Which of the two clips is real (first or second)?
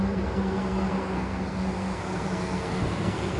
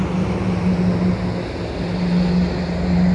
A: second